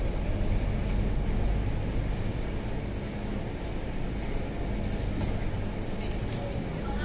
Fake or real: real